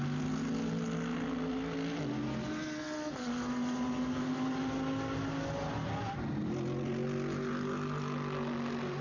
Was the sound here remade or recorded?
recorded